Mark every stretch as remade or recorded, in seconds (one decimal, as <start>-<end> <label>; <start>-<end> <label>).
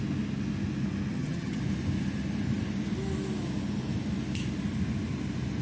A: 0.0-1.1 recorded; 1.1-1.6 remade; 1.6-5.6 recorded